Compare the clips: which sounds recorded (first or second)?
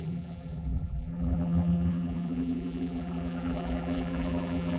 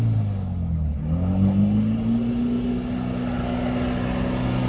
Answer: second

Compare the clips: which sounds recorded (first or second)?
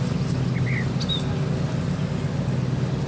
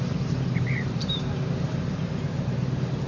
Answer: first